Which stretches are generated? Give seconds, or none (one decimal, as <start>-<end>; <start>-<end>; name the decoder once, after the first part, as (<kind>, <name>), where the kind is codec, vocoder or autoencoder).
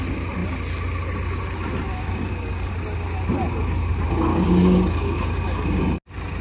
1.9-2.7 (codec, DAC); 4.3-5.8